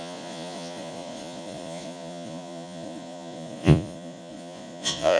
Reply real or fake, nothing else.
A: fake